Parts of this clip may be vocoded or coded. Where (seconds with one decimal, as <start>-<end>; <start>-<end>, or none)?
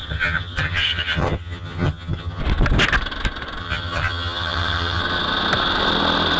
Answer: 0.0-2.4; 3.6-5.0